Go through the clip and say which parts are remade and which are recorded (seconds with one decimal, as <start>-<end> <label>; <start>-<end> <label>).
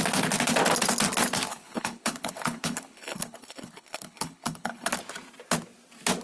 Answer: 0.0-1.5 recorded; 1.5-4.9 remade; 4.9-6.2 recorded